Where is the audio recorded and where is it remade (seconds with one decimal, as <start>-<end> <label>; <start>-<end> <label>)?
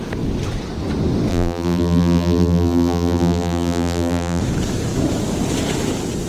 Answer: 0.0-1.3 recorded; 1.3-4.4 remade; 4.4-6.3 recorded